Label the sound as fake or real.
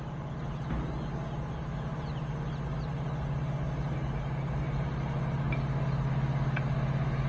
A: real